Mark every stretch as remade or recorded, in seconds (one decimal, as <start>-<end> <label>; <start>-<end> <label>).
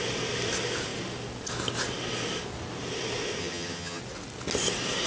0.0-3.4 recorded; 3.4-4.0 remade; 4.0-5.1 recorded